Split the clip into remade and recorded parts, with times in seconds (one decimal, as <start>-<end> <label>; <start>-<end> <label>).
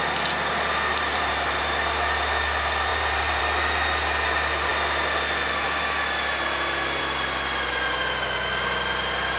0.0-0.9 recorded; 0.9-1.6 remade; 1.6-2.9 recorded; 2.9-3.4 remade; 3.4-9.4 recorded